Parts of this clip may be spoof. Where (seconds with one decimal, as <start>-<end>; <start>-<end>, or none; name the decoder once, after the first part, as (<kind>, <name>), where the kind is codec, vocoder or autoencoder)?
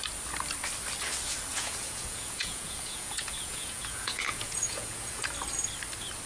1.5-5.3 (vocoder, Vocos)